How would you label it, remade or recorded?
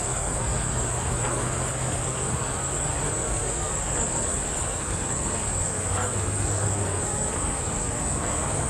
remade